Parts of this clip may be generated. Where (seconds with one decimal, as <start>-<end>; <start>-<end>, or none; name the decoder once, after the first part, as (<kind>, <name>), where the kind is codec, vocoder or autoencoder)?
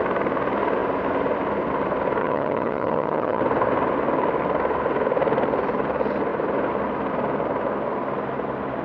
2.2-3.4 (vocoder, HiFi-GAN)